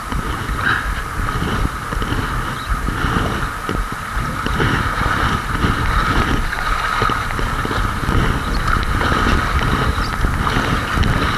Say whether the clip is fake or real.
real